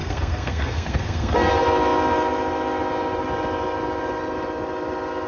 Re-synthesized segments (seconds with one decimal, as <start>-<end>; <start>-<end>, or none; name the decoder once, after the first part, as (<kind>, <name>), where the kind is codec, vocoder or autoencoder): 0.0-1.5 (codec, SNAC)